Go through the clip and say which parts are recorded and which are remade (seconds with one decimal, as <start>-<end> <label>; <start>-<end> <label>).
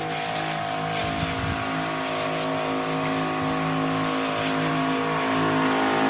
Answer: 0.0-6.1 recorded